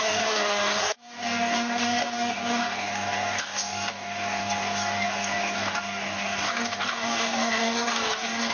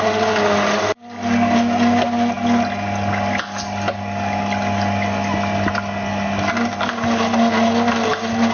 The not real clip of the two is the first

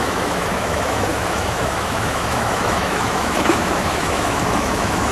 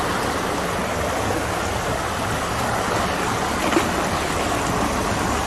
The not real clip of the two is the first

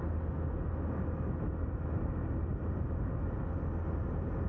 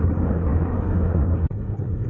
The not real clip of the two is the second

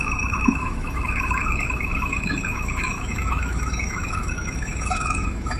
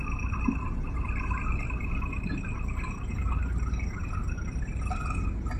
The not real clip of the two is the first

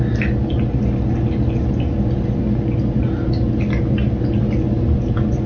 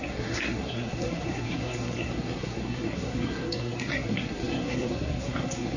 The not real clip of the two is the second